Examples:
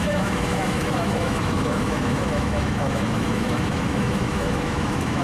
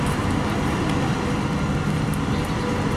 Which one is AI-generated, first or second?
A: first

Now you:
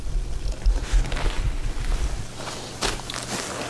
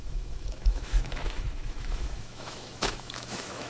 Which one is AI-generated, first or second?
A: second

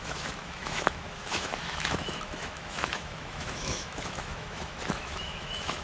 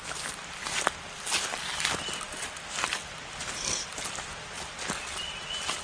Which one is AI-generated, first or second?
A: first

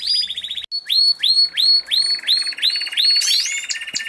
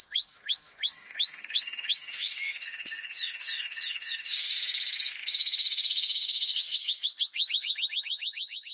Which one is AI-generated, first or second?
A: second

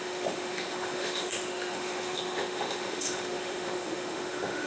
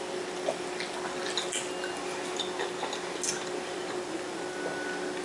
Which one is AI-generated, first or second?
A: first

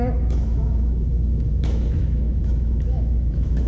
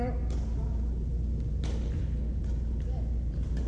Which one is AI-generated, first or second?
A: first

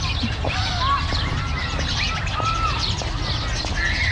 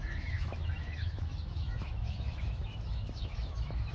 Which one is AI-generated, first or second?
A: second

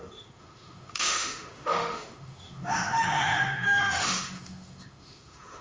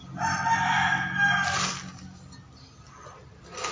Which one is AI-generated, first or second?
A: first